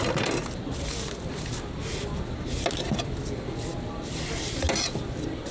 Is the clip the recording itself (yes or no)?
yes